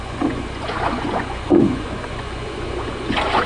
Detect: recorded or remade remade